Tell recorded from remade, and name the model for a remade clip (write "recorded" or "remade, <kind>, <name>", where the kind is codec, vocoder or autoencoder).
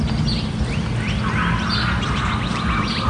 recorded